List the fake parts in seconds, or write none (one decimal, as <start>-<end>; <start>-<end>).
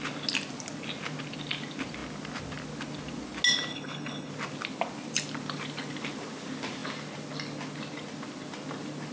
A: 3.7-4.3